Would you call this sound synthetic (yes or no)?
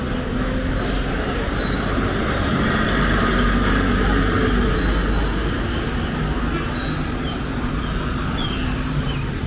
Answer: no